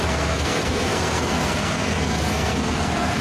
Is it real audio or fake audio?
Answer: fake